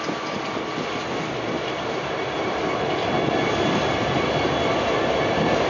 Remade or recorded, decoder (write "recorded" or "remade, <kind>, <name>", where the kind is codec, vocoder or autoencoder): recorded